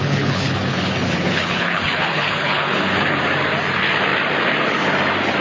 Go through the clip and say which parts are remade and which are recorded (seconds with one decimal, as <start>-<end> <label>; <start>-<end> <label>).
0.0-3.2 remade; 3.2-5.4 recorded